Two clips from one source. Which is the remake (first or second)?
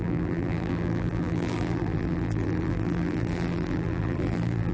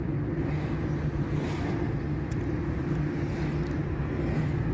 first